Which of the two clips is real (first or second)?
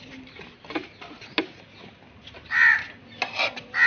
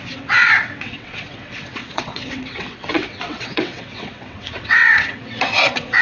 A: first